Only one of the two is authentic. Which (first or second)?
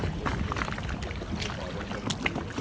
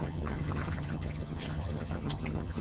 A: first